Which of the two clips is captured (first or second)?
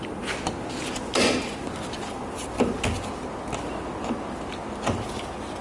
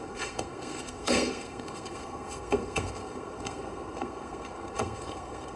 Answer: first